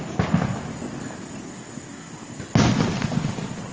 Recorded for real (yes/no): yes